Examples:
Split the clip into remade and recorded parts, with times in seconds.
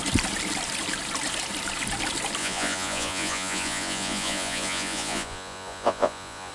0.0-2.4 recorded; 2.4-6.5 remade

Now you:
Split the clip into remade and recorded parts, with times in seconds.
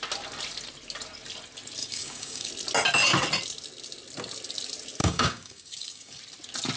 0.0-1.8 recorded; 1.8-2.5 remade; 2.5-5.0 recorded; 5.0-6.2 remade; 6.2-6.8 recorded